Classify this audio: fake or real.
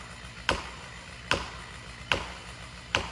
real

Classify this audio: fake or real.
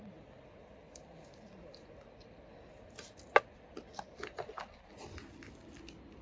real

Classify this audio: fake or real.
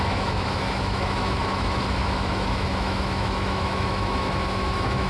fake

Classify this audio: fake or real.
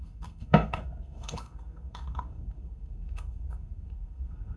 fake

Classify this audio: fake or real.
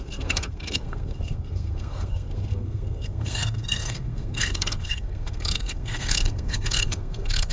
fake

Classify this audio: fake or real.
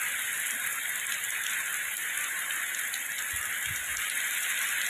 real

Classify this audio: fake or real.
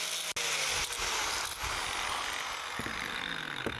real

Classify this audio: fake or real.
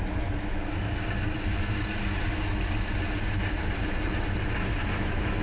real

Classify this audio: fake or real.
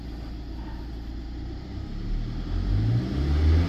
real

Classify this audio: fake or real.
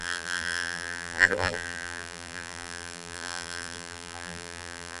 fake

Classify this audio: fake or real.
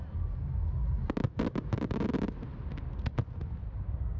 real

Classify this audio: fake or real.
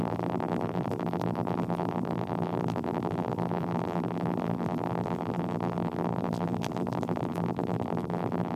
fake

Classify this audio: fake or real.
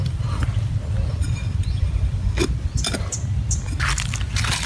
real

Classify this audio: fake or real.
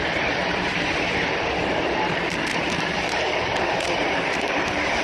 fake